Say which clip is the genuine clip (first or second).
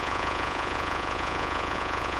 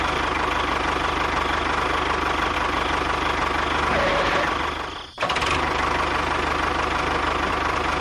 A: second